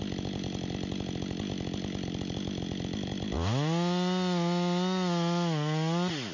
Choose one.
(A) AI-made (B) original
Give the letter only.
B